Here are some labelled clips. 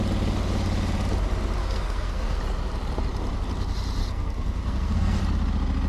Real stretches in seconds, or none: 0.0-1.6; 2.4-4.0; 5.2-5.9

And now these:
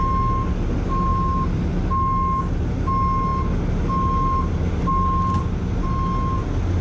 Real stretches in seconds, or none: 0.0-6.8

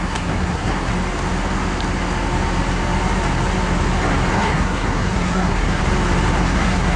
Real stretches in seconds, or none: 0.9-4.3; 5.8-6.4

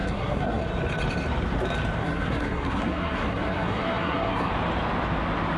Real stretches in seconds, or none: 0.6-2.0; 4.5-5.6

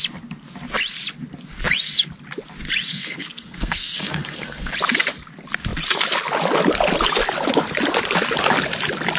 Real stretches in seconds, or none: 0.0-2.9; 4.7-9.2

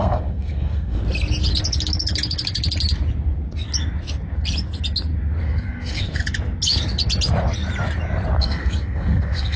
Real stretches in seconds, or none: 1.0-5.4; 6.2-8.4

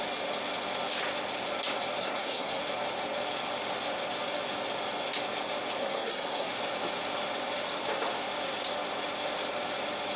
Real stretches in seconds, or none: 0.0-2.0; 2.6-5.8; 6.5-10.2

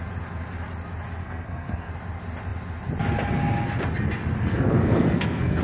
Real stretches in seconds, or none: 0.0-1.2; 1.9-4.4